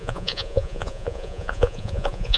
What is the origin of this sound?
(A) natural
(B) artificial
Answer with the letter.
B